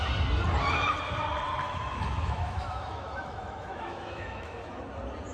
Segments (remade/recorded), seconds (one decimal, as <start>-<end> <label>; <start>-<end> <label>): 0.0-1.6 recorded; 1.6-4.8 remade; 4.8-5.3 recorded